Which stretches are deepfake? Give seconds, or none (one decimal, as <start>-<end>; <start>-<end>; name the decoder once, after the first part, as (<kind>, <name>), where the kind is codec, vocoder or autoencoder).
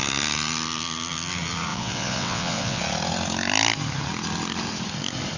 1.7-2.8 (vocoder, WaveNeXt)